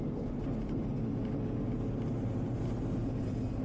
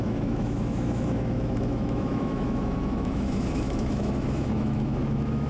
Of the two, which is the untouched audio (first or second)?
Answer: first